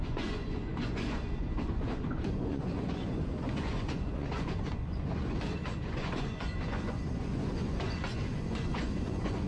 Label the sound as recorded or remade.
remade